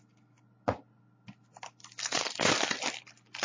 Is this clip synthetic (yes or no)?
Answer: no